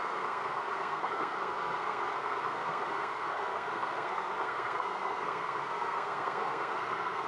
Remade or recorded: remade